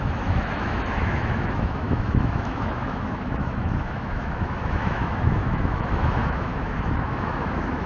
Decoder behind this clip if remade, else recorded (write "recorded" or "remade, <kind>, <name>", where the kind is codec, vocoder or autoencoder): remade, autoencoder, DAC-VAE